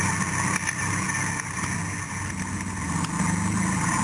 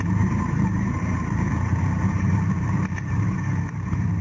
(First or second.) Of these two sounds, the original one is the first